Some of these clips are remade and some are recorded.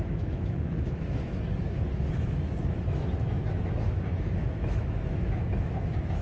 remade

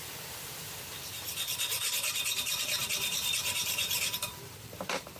remade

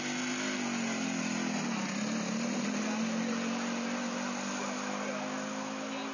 recorded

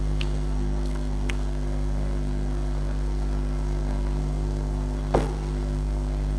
remade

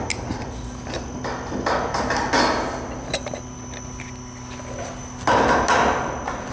recorded